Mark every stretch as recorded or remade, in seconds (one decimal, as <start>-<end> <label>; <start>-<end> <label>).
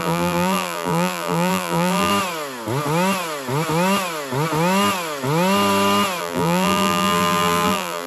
0.0-2.1 remade; 2.1-6.2 recorded; 6.2-8.1 remade